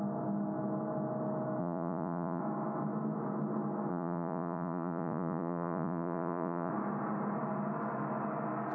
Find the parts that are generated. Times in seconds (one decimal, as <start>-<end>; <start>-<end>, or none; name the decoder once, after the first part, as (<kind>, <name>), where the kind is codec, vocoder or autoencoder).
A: 1.6-2.4 (vocoder, Vocos); 3.9-6.7